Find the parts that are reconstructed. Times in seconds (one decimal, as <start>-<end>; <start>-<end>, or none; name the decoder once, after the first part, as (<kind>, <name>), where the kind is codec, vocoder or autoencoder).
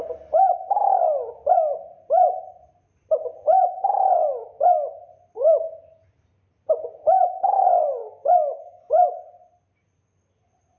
8.0-8.9 (autoencoder, DAC-VAE)